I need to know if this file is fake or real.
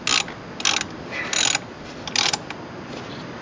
real